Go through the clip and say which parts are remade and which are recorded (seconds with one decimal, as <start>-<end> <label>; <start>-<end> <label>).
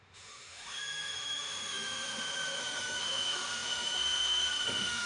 0.0-5.1 remade